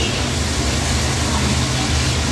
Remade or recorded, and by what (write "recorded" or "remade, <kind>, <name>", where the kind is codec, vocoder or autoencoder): recorded